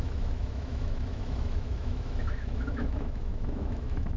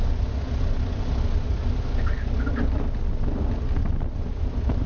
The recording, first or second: second